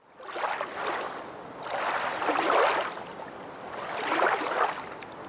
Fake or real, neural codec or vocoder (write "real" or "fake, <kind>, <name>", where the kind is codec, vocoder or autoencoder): real